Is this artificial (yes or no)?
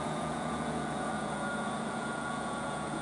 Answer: yes